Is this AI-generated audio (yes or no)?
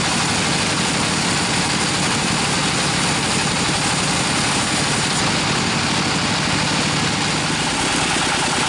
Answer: no